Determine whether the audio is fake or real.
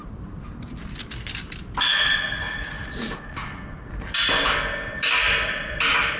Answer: real